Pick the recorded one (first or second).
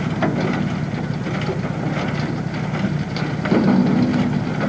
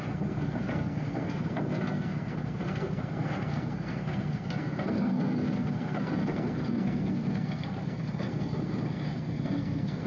first